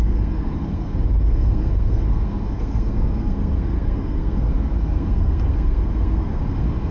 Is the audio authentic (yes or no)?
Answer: no